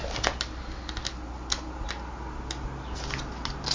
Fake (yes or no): no